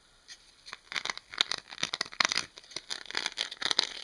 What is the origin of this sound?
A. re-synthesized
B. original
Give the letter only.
B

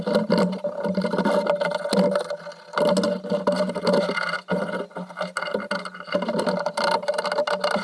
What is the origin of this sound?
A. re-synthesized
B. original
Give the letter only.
B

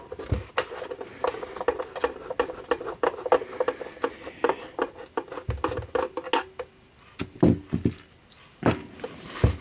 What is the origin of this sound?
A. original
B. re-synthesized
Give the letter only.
A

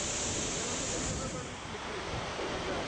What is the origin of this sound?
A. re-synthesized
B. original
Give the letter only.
B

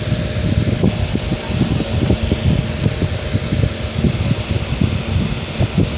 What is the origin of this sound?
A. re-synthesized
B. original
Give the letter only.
B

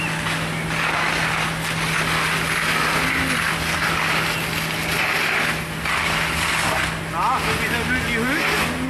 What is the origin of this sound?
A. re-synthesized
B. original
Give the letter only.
B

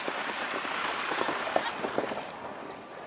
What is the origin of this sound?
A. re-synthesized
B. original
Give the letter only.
B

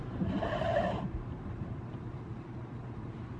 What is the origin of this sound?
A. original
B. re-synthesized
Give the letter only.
B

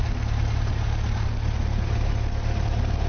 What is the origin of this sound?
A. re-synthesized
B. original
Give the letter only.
B